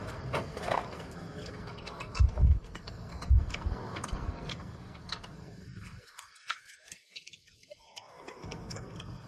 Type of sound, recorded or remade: remade